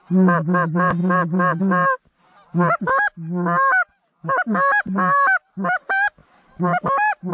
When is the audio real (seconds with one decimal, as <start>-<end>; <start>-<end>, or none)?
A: 0.0-7.3

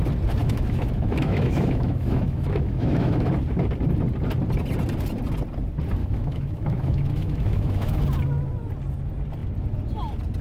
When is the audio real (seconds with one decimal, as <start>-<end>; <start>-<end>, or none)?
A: 0.0-0.4; 3.3-6.0; 8.0-10.4

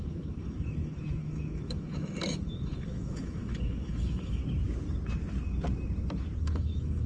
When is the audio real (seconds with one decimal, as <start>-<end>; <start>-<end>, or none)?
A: 4.4-6.4

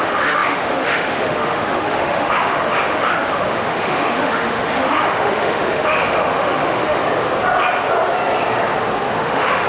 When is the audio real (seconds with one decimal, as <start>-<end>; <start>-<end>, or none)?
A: 7.0-9.2

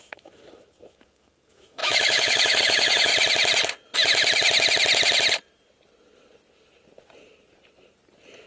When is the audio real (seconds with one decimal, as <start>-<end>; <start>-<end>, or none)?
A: 3.1-8.5

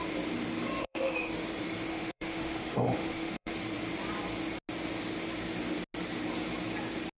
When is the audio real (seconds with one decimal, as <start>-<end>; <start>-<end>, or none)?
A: 0.0-0.8; 1.3-1.9; 3.5-7.2

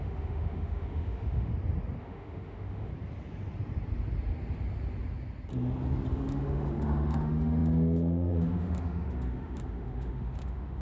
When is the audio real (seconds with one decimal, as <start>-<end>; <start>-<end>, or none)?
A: 1.5-2.0; 2.9-6.1